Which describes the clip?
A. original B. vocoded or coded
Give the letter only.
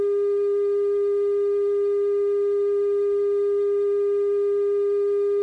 B